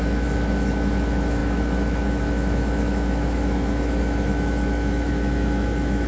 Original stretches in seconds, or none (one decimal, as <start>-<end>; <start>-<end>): none